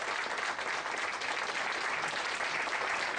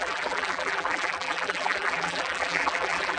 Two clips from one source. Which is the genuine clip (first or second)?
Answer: first